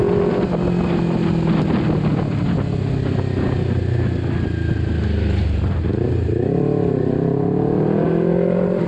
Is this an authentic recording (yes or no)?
yes